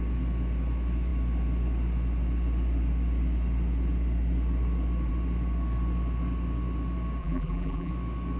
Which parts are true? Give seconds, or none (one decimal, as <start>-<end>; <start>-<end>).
0.0-7.2; 7.9-8.4

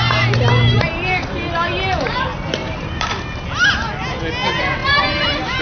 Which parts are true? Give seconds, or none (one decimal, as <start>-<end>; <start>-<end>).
0.0-2.6; 3.1-4.8

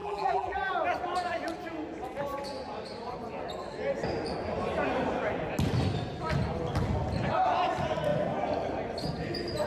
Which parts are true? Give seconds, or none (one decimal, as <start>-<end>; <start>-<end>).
0.7-9.7